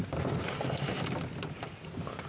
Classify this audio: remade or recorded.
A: recorded